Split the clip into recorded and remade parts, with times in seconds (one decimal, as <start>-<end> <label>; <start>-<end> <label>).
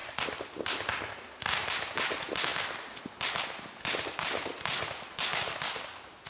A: 0.0-0.9 remade; 0.9-6.3 recorded